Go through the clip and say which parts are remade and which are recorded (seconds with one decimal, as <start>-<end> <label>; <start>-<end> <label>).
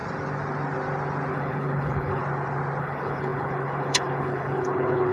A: 0.0-1.3 recorded; 1.3-2.2 remade; 2.2-2.8 recorded; 2.8-5.1 remade